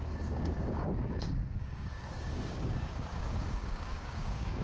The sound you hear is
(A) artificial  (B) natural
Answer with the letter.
A